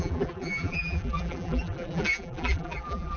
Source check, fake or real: fake